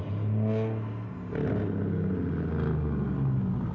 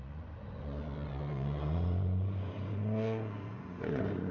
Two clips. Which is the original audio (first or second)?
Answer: first